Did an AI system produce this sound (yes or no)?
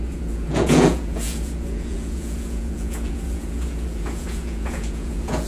yes